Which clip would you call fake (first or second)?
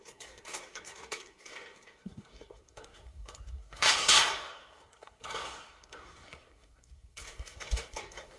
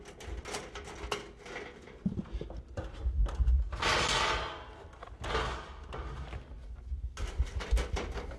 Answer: first